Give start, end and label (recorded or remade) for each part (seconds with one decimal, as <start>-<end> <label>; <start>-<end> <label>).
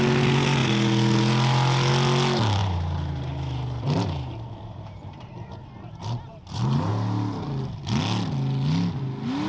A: 0.0-2.6 recorded; 2.6-6.9 remade; 6.9-9.5 recorded